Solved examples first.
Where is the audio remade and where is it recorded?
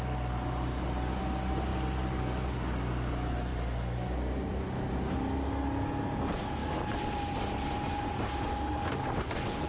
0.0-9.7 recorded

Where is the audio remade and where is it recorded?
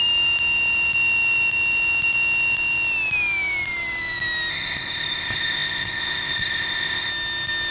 0.0-4.5 recorded; 4.5-7.1 remade; 7.1-7.7 recorded